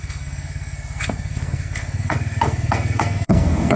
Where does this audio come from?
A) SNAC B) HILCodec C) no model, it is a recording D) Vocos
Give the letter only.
A